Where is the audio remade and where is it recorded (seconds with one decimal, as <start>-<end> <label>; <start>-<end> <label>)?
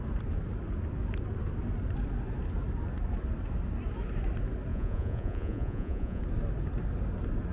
0.0-4.7 recorded; 4.7-6.2 remade; 6.2-7.5 recorded